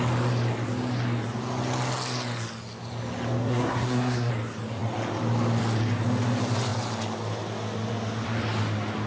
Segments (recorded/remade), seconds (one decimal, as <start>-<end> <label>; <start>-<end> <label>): 0.0-3.4 recorded; 3.4-4.3 remade; 4.3-9.1 recorded